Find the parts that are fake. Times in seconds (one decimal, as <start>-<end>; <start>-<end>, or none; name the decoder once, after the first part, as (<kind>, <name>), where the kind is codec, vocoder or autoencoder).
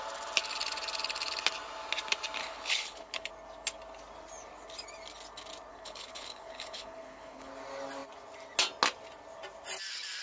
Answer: 2.4-3.3 (codec, HILCodec); 5.7-7.5